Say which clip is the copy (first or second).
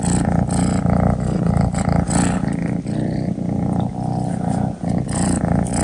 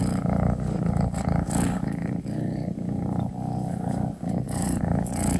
second